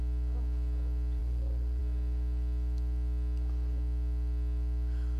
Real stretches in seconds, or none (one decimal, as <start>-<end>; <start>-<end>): 0.0-1.2; 1.8-5.2